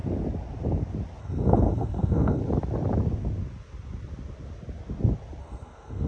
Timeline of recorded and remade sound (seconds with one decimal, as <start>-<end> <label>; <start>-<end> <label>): 0.0-1.2 recorded; 1.2-2.4 remade; 2.4-5.4 recorded; 5.4-6.1 remade